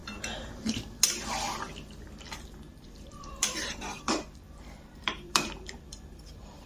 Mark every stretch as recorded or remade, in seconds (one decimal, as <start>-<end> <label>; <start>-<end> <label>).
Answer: 0.0-2.7 recorded; 2.7-6.7 remade

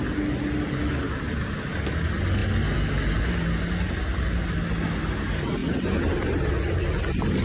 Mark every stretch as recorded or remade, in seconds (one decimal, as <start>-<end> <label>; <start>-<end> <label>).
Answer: 0.0-5.6 recorded; 5.6-6.5 remade; 6.5-7.4 recorded

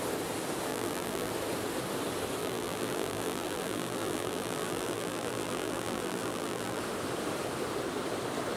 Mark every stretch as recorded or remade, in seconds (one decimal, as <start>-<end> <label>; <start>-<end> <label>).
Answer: 0.0-0.7 recorded; 0.7-1.3 remade; 1.3-2.4 recorded; 2.4-6.8 remade; 6.8-8.6 recorded

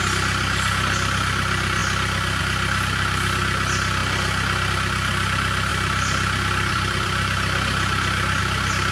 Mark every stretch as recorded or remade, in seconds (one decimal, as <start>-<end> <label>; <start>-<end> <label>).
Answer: 0.0-5.7 recorded; 5.7-8.4 remade; 8.4-8.9 recorded

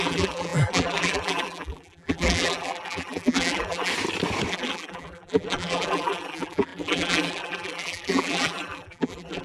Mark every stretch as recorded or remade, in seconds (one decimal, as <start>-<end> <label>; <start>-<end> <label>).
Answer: 0.0-3.9 remade; 3.9-4.5 recorded; 4.5-9.4 remade

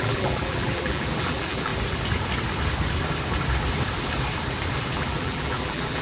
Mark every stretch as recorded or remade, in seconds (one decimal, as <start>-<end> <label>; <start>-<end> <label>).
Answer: 0.0-1.7 remade; 1.7-4.8 recorded; 4.8-6.0 remade

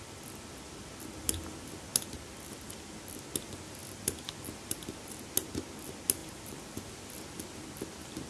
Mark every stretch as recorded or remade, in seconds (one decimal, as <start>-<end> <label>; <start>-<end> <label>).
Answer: 0.0-3.8 recorded; 3.8-4.3 remade; 4.3-6.2 recorded; 6.2-6.9 remade; 6.9-8.3 recorded

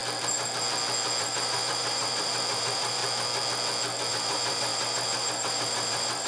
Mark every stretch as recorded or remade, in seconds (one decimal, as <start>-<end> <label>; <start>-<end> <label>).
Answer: 0.0-1.2 recorded; 1.2-3.0 remade; 3.0-4.1 recorded; 4.1-6.3 remade